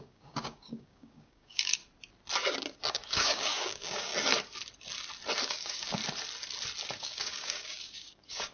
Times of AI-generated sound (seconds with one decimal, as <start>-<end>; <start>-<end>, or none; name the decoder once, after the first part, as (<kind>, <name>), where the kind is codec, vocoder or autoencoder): 0.0-1.8 (codec, DAC); 2.9-4.1; 5.4-6.0; 6.9-8.5